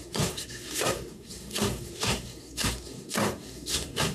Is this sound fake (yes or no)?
yes